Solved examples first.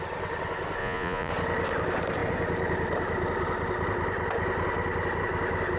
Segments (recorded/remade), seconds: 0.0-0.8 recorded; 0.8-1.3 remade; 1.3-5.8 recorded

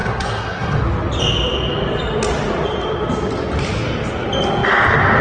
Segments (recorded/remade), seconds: 0.0-0.8 remade; 0.8-5.2 recorded

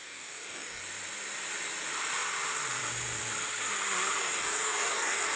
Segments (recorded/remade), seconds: 0.0-0.8 remade; 0.8-4.2 recorded; 4.2-5.4 remade

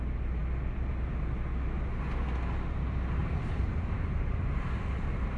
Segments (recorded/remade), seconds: 0.0-3.2 recorded; 3.2-4.8 remade; 4.8-5.4 recorded

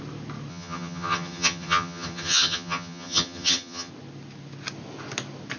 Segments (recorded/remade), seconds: 0.0-0.5 recorded; 0.5-3.9 remade; 3.9-5.6 recorded

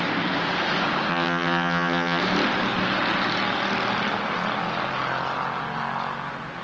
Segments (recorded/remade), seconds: 0.0-1.1 recorded; 1.1-2.2 remade; 2.2-6.6 recorded

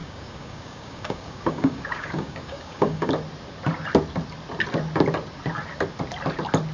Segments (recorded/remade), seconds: 0.0-3.1 remade; 3.1-6.7 recorded

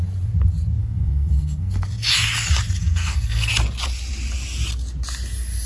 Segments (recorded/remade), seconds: 0.0-0.8 recorded; 0.8-1.7 remade; 1.7-2.8 recorded; 2.8-3.5 remade; 3.5-5.7 recorded